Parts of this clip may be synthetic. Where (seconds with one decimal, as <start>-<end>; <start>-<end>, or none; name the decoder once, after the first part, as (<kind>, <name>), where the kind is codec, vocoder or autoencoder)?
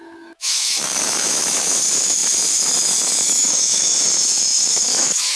0.0-5.4 (autoencoder, DAC-VAE)